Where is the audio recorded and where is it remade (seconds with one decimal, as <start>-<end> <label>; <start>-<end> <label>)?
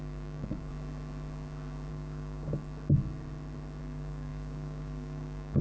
0.0-0.7 remade; 0.7-1.9 recorded; 1.9-2.6 remade; 2.6-3.8 recorded; 3.8-5.6 remade